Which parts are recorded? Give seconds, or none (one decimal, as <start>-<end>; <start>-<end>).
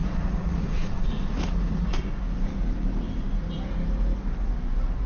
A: 2.0-5.1